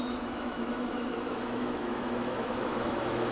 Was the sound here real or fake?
fake